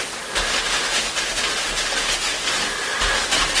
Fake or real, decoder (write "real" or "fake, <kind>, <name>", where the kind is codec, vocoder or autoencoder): real